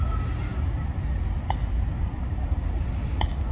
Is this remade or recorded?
recorded